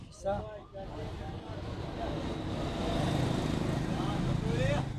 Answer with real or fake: real